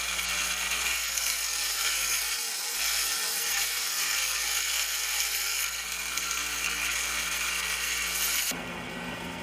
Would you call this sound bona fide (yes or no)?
no